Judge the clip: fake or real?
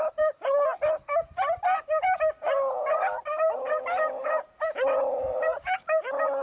real